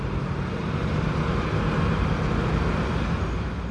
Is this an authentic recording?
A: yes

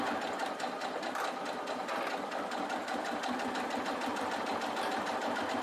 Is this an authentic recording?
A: yes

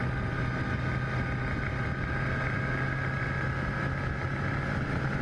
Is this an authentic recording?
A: yes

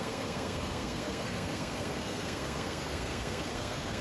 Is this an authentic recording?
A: no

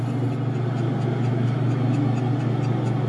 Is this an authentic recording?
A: yes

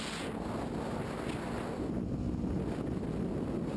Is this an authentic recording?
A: yes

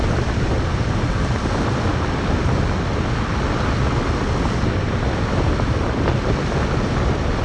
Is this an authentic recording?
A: yes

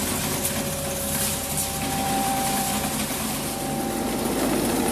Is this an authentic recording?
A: yes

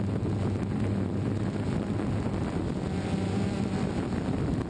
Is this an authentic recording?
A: yes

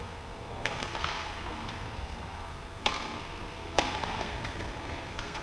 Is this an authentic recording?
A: no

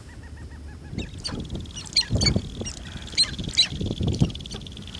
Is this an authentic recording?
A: yes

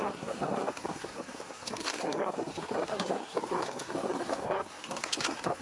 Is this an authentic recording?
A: no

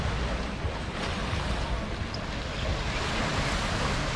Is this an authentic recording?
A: yes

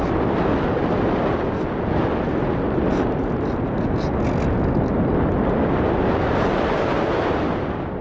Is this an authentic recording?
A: yes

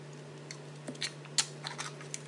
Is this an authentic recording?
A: yes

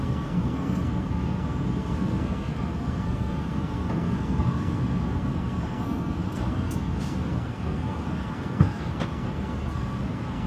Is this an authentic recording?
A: no